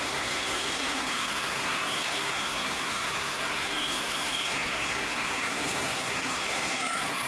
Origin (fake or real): fake